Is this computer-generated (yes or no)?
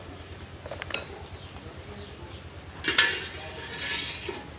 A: no